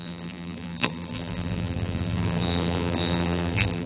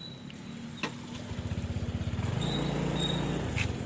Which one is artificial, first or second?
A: first